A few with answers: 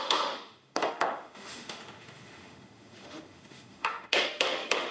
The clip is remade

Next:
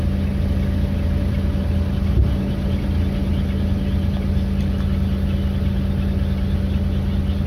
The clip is recorded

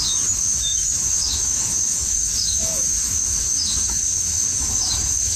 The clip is remade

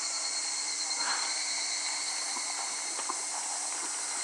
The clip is recorded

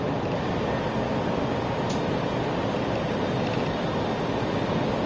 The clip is recorded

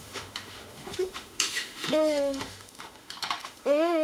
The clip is remade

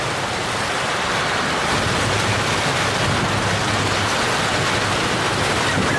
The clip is recorded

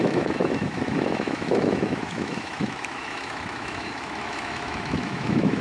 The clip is remade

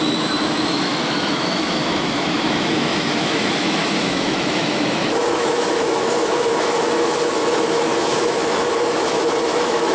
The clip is remade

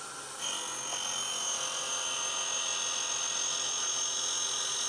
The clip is recorded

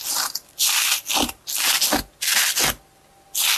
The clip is recorded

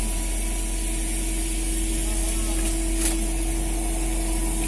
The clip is recorded